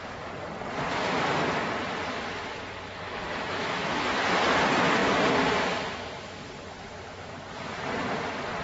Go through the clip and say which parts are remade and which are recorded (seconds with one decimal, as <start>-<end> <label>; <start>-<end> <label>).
0.0-3.3 recorded; 3.3-4.3 remade; 4.3-8.6 recorded